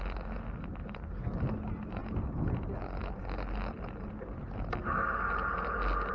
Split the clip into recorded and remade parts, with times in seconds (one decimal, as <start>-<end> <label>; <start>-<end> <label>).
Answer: 0.0-6.1 recorded